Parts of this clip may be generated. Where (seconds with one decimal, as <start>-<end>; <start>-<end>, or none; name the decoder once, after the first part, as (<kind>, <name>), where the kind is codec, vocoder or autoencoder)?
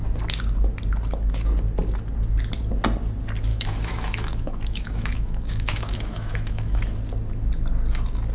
3.5-6.8 (autoencoder, DAC-VAE)